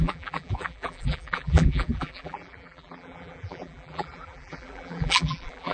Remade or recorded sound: remade